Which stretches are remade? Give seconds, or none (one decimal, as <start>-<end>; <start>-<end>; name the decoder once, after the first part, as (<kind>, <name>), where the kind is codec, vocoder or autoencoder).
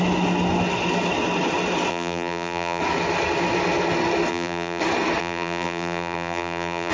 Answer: 1.9-2.8 (vocoder, BigVGAN v2); 4.3-4.8; 5.2-6.9